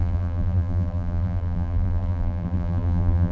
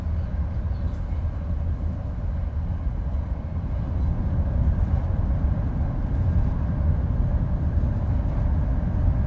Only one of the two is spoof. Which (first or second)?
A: first